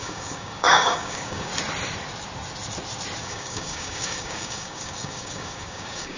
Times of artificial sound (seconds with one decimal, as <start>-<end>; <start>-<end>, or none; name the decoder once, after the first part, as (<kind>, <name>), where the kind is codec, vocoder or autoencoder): 0.0-1.5 (codec, DAC); 3.2-6.2